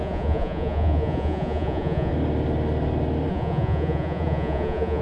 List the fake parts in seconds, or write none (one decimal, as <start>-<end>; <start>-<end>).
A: 0.0-2.1; 3.3-5.0